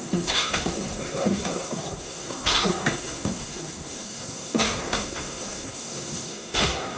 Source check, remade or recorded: remade